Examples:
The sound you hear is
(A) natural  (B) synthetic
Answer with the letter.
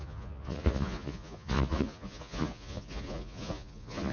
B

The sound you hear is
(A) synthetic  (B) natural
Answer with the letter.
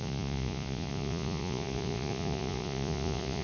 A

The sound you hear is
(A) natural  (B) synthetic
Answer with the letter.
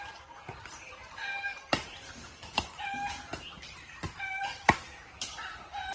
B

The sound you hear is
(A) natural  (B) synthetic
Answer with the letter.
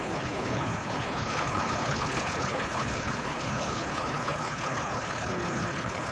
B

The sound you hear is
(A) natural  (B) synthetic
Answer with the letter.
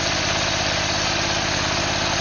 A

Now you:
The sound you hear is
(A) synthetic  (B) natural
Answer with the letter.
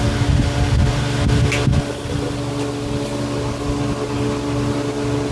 B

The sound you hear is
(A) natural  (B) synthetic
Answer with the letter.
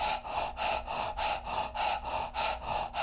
A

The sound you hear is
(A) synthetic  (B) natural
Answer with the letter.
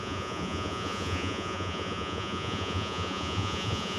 A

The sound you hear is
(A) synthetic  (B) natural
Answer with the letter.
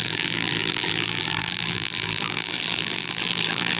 A